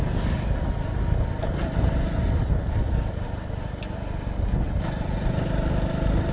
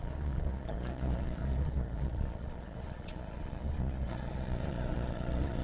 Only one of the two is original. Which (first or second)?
first